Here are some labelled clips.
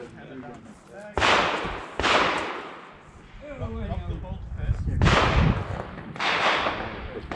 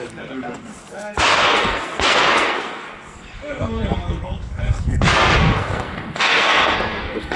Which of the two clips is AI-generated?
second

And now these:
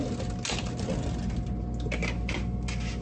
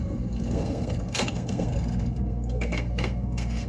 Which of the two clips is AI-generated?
second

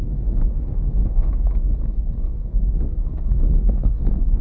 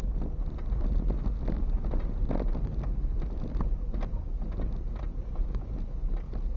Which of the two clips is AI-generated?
first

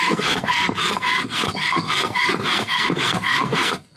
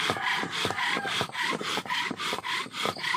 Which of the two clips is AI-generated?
first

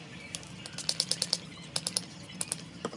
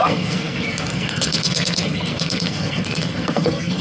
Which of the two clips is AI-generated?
second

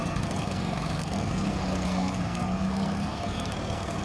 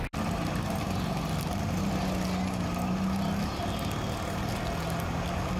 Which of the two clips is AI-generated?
first